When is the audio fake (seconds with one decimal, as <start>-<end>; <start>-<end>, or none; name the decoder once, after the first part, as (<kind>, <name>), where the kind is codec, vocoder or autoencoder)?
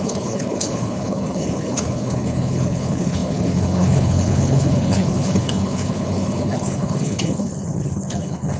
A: 0.0-8.6 (codec, HILCodec)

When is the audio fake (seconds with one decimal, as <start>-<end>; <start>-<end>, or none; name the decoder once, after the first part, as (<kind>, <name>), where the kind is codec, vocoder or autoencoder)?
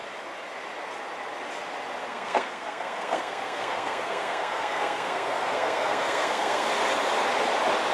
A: 2.0-6.7 (codec, SNAC)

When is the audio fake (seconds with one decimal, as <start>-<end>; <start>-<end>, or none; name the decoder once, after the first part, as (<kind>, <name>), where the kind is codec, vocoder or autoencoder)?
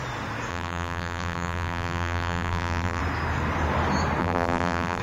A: 0.5-3.0 (vocoder, BigVGAN v2); 4.2-5.0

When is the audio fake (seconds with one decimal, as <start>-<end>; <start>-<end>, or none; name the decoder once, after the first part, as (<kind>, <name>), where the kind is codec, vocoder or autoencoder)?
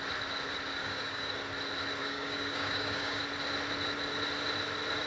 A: 0.8-1.3 (codec, DAC); 2.0-3.2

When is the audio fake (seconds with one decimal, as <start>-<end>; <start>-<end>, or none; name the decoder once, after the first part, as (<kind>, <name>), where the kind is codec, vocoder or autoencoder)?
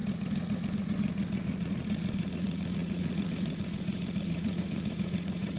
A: 0.8-5.6 (vocoder, Vocos)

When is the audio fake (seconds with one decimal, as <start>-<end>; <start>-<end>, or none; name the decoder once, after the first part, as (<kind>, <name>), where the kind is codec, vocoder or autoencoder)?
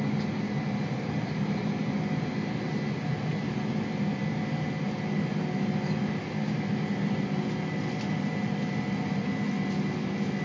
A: none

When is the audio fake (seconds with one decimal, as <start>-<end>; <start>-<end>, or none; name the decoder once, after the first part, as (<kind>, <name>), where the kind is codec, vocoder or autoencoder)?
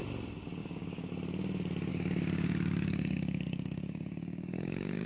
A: 0.6-1.1 (codec, DAC); 1.9-5.1